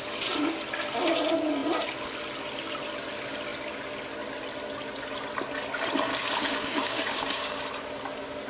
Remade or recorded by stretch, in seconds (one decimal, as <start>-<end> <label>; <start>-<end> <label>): 0.0-6.1 recorded; 6.1-7.6 remade; 7.6-8.5 recorded